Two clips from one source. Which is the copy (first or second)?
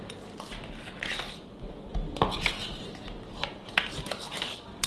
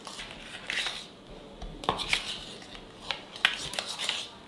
first